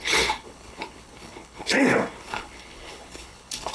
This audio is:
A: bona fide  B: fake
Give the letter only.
B